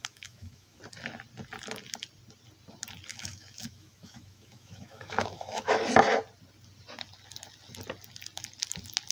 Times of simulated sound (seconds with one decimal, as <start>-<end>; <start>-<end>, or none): 0.0-0.8; 3.1-5.8